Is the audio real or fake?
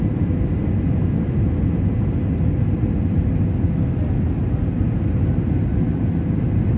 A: real